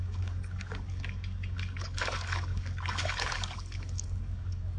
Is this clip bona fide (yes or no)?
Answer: no